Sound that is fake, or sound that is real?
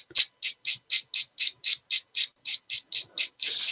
real